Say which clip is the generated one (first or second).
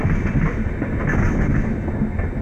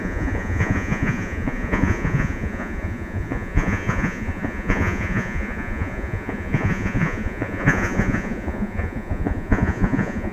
second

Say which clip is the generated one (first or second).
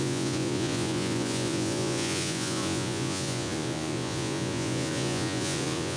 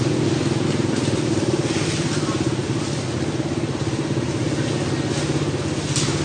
first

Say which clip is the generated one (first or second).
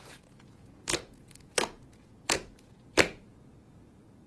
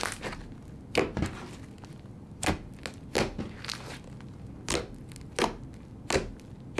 first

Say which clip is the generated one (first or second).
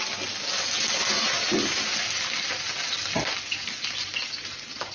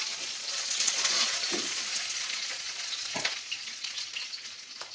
second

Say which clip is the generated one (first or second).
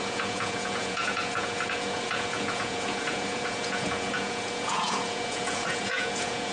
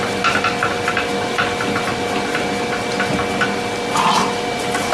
first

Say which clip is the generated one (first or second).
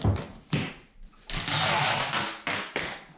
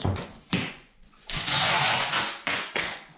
second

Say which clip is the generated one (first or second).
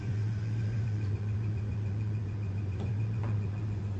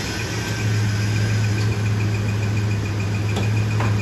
first